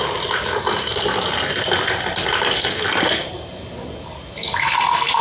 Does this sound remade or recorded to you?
recorded